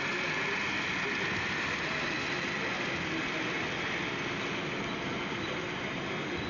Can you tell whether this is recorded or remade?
recorded